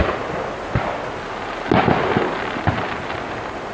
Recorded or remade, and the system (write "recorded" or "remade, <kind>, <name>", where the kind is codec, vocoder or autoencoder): recorded